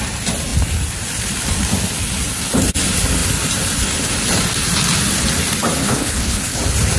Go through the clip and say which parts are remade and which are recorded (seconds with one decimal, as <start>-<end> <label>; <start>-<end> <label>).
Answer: 0.0-5.8 recorded; 5.8-6.6 remade; 6.6-7.0 recorded